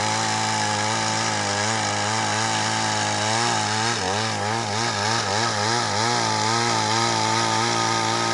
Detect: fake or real real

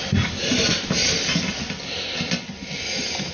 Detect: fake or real real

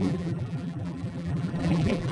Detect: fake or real fake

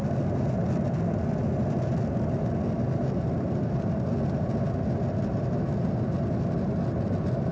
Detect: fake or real real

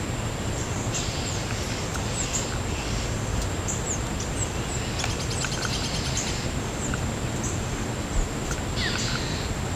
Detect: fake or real real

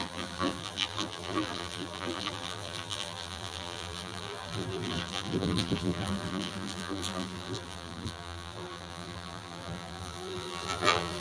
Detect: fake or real fake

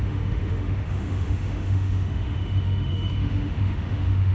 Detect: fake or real fake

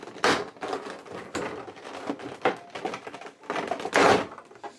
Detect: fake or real real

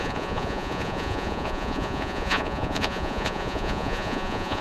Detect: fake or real fake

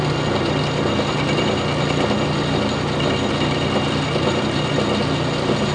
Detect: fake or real real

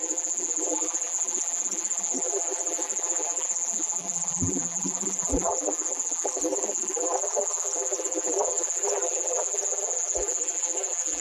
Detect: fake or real fake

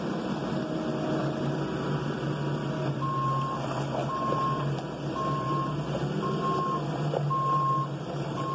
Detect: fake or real real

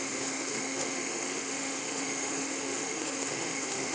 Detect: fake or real fake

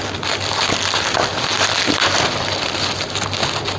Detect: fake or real real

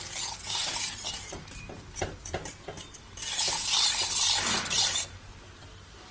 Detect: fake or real fake